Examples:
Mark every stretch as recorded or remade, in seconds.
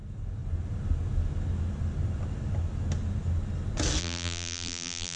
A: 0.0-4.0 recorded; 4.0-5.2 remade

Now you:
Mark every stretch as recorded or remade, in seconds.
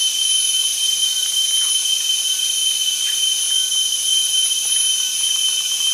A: 0.0-0.7 recorded; 0.7-1.7 remade; 1.7-4.1 recorded; 4.1-4.7 remade; 4.7-5.9 recorded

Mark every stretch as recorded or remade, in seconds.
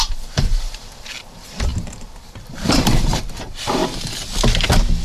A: 0.0-1.7 remade; 1.7-2.2 recorded; 2.2-3.8 remade; 3.8-5.0 recorded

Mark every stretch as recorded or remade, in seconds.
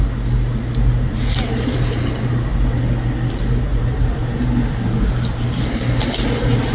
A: 0.0-3.7 recorded; 3.7-6.0 remade; 6.0-6.7 recorded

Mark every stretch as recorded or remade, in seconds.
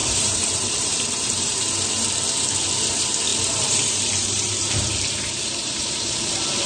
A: 0.0-1.7 remade; 1.7-3.3 recorded; 3.3-6.7 remade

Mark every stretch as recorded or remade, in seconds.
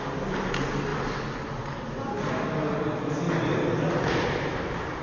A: 0.0-5.0 recorded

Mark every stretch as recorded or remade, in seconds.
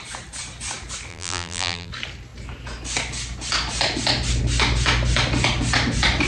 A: 0.0-1.1 recorded; 1.1-1.9 remade; 1.9-6.3 recorded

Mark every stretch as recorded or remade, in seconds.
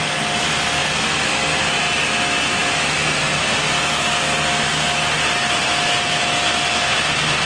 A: 0.0-7.5 recorded